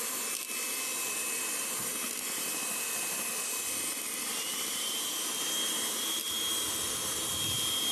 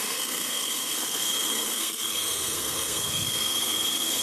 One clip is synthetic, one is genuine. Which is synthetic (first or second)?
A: second